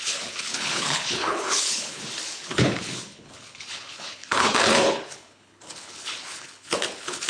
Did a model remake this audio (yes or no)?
yes